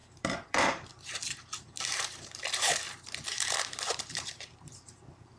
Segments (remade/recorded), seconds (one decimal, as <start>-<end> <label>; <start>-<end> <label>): 0.0-5.4 remade